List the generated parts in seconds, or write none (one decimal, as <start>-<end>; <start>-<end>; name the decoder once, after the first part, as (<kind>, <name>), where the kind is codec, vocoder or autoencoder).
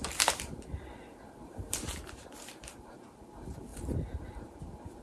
0.0-2.9 (vocoder, BigVGAN v2); 3.7-4.6